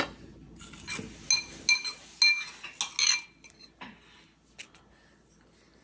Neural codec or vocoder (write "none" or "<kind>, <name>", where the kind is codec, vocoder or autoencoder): none